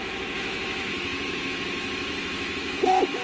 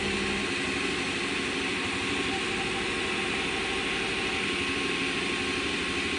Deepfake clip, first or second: first